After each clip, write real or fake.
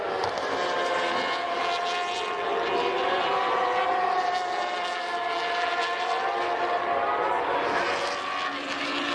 real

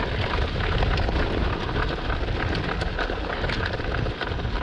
real